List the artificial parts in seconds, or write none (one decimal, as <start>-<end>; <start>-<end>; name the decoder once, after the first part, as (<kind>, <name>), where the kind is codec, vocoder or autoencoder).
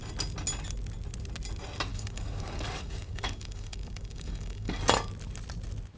1.9-4.8 (codec, DAC)